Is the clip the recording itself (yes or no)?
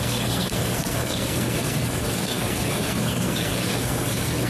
no